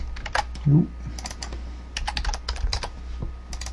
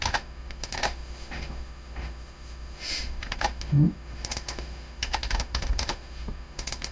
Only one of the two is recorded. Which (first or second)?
first